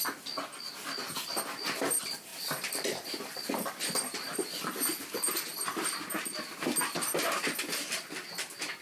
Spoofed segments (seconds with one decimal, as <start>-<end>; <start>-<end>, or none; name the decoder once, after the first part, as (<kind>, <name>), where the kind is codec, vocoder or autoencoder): 2.3-4.5 (vocoder, BigVGAN v2); 5.5-6.1